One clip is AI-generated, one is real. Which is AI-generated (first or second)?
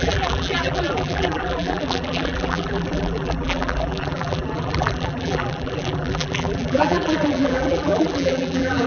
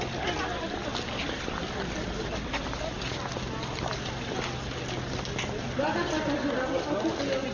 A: first